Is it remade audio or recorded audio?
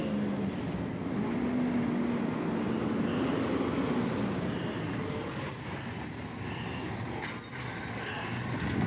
recorded